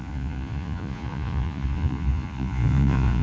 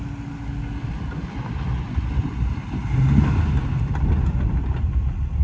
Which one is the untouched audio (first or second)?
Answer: second